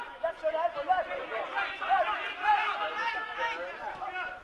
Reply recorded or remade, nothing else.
recorded